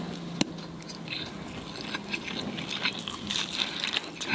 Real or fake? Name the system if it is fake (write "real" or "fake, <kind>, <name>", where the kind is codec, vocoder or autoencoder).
real